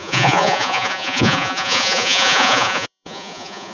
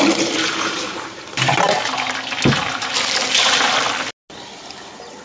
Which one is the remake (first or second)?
first